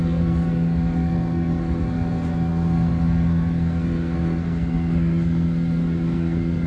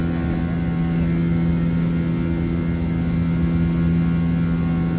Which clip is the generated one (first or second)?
first